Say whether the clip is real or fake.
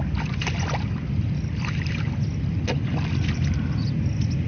real